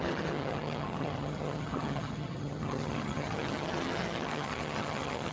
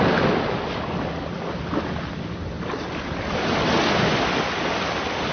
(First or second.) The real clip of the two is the second